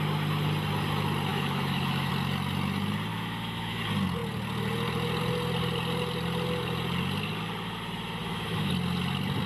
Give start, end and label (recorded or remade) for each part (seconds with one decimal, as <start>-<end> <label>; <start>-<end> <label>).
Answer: 0.0-1.3 recorded; 1.3-2.1 remade; 2.1-3.1 recorded; 3.1-3.8 remade; 3.8-8.2 recorded; 8.2-8.7 remade; 8.7-9.5 recorded